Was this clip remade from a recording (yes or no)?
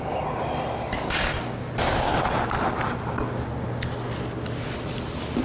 no